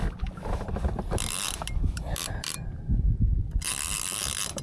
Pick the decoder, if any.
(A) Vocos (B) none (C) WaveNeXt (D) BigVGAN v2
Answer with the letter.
B